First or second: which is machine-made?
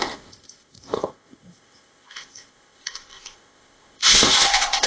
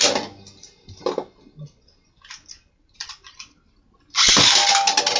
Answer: first